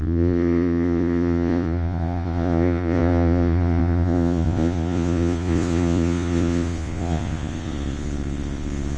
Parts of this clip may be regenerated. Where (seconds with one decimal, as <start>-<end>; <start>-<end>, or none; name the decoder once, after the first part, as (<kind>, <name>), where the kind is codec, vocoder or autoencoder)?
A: 0.0-9.0 (vocoder, Vocos)